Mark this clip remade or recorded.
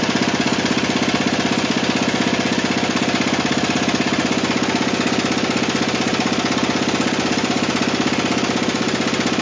recorded